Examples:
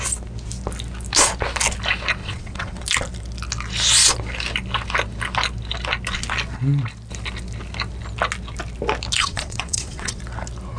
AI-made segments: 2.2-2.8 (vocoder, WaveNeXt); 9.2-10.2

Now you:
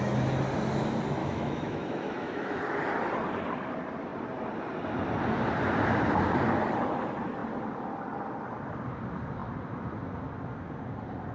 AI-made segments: 1.2-2.6 (autoencoder, DAC-VAE)

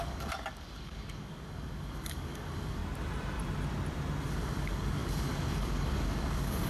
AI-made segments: 0.0-2.8 (codec, DAC); 4.3-6.7